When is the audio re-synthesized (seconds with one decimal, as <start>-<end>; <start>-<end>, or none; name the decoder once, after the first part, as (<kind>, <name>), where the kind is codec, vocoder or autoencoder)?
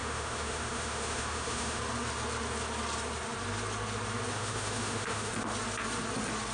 0.0-1.8 (autoencoder, DAC-VAE); 4.3-5.3